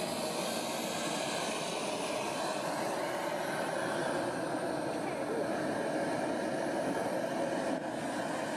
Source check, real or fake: real